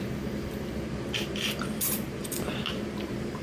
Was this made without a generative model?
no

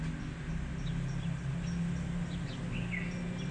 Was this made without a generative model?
yes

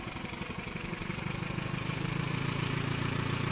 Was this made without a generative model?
no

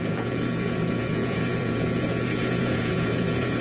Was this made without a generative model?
no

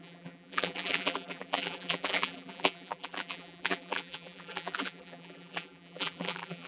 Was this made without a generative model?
no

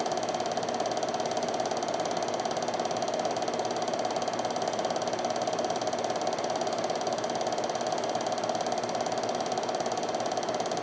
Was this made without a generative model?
yes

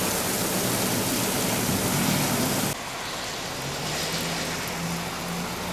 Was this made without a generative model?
yes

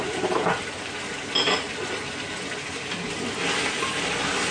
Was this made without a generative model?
yes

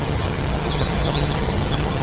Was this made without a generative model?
no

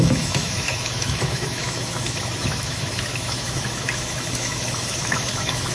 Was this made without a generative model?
no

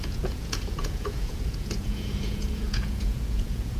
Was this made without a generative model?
no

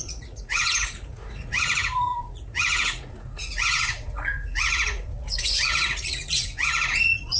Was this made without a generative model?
no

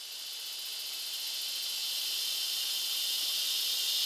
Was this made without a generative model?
yes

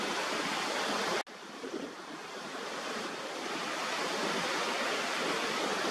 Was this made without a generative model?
yes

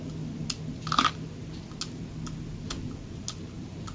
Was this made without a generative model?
yes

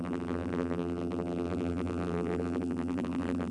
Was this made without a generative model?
no